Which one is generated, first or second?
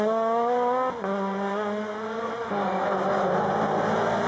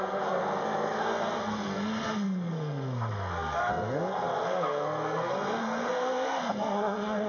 second